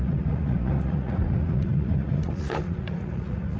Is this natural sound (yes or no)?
no